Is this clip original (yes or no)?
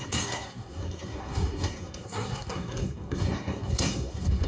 no